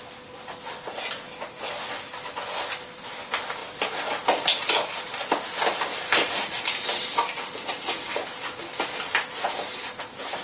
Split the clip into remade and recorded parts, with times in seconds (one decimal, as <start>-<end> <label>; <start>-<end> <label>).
0.0-10.4 recorded